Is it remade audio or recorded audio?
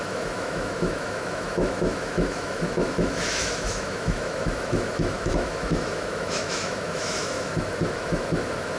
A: remade